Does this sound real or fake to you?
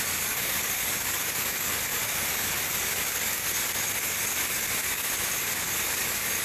fake